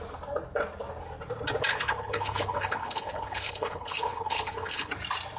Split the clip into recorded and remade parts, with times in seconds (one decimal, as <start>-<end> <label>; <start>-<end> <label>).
0.0-1.7 recorded; 1.7-4.9 remade; 4.9-5.4 recorded